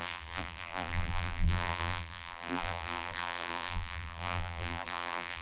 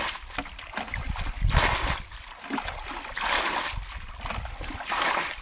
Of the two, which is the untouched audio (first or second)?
second